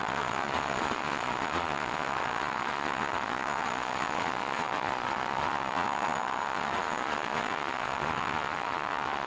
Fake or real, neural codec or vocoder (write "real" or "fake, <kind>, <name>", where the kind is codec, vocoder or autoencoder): fake, vocoder, Vocos